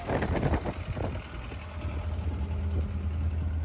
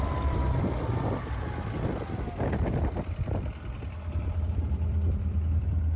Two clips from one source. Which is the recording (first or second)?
first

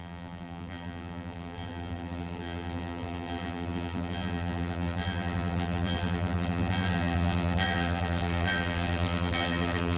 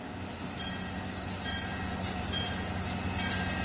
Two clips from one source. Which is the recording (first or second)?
second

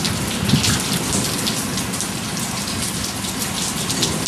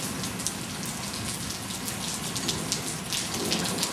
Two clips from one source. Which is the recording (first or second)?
second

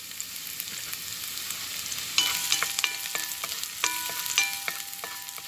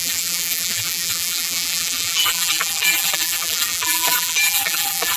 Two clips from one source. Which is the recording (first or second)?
first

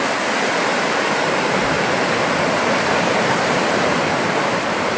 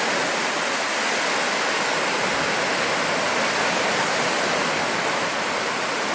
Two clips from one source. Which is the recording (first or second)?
second